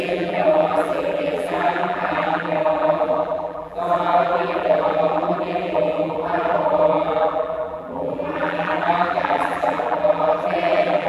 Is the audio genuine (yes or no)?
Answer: no